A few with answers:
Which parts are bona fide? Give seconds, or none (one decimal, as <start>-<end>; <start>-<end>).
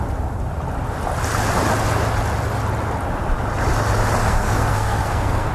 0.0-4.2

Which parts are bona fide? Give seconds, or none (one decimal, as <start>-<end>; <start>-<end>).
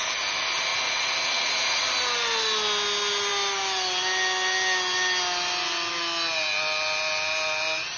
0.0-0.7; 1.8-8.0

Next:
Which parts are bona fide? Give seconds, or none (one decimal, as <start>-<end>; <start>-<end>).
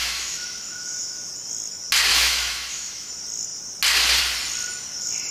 1.3-2.1; 3.1-5.3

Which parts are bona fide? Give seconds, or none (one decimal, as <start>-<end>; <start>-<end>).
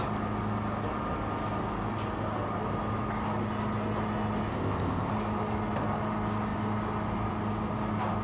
0.0-4.5; 5.1-8.2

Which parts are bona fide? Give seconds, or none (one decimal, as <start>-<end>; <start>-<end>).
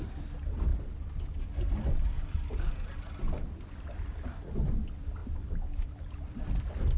0.0-5.2; 6.4-7.0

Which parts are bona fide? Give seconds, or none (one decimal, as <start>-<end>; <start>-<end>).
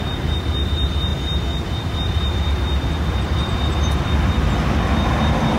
0.0-1.1; 4.5-5.6